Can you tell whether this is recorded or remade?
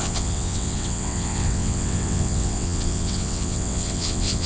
remade